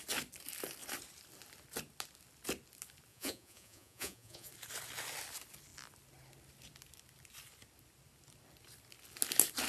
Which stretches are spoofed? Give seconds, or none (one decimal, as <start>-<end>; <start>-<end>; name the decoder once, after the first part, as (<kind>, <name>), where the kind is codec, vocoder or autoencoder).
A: 3.1-4.5 (vocoder, Vocos)